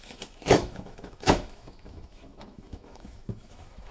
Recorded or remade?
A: remade